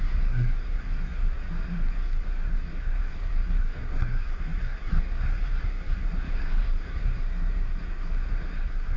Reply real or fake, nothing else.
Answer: fake